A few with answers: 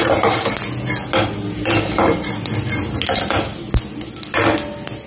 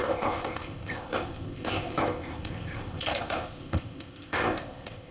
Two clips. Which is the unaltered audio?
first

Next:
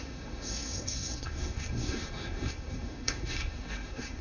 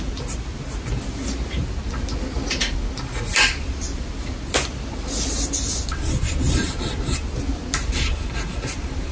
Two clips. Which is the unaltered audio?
second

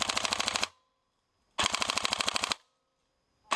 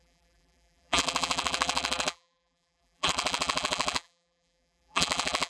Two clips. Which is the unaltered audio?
first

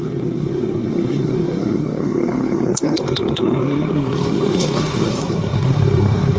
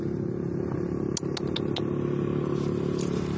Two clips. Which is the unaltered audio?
second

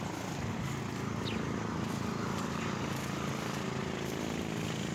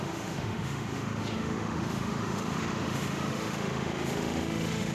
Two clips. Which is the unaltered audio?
first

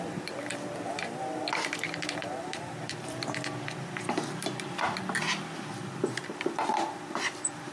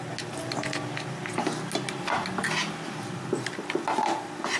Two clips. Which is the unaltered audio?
second